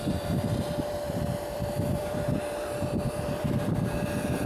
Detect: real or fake fake